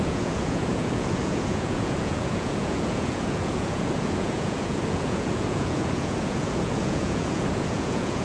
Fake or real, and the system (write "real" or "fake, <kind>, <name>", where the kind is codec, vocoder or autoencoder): fake, vocoder, Vocos